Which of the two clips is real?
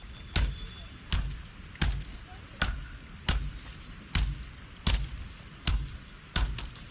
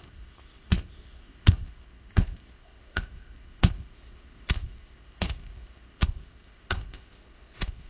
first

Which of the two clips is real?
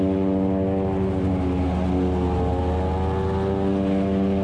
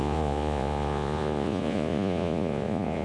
first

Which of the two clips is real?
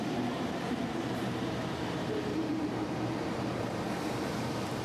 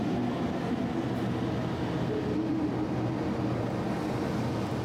second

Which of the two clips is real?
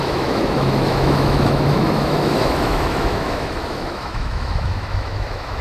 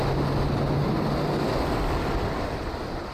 second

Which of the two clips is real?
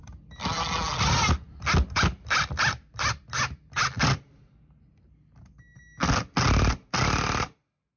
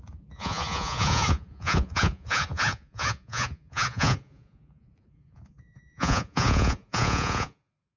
first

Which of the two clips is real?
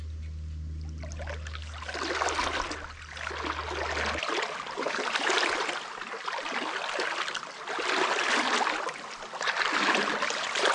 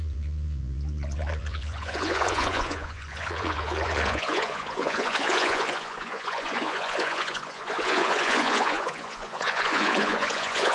first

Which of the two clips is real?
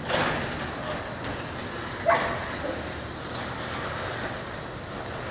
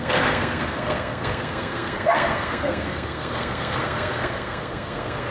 first